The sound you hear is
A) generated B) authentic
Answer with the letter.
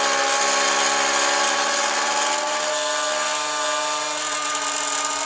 B